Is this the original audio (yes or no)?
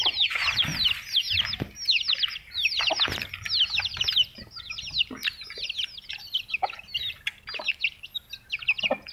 yes